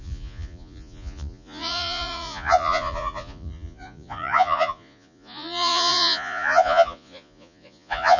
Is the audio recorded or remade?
remade